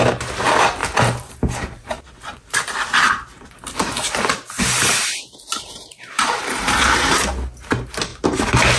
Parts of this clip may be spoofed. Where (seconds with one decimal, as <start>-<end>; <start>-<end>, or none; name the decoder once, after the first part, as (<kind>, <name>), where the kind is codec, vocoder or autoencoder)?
0.8-1.9 (vocoder, BigVGAN v2); 2.3-6.8